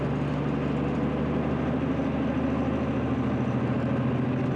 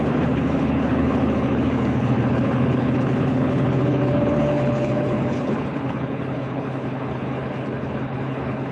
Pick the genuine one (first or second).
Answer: first